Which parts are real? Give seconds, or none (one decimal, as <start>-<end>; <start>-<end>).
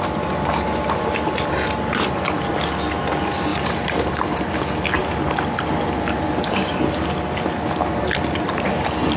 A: 0.0-9.2